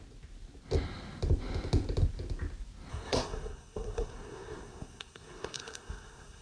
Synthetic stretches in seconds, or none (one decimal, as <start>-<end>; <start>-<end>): 2.9-6.4